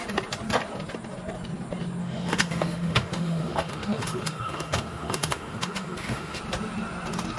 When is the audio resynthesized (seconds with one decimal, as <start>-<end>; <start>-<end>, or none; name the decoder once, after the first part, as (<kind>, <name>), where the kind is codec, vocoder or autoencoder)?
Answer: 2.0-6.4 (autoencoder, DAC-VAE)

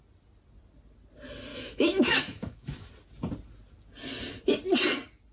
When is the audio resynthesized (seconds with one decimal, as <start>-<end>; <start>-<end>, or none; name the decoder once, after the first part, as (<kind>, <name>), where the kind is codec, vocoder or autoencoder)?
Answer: 1.5-2.9 (autoencoder, DAC-VAE)

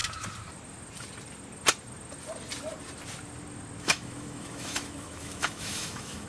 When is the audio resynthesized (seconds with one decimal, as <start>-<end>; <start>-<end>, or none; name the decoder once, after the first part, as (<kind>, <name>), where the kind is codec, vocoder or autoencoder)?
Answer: 3.8-6.3 (autoencoder, DAC-VAE)